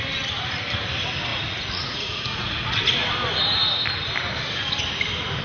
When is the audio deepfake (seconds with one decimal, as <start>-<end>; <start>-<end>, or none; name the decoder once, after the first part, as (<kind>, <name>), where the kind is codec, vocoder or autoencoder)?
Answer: 1.3-2.8 (vocoder, Vocos)